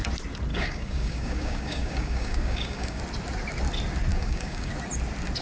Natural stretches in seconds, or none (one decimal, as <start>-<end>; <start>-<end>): 0.0-0.5; 3.0-4.1; 4.7-5.4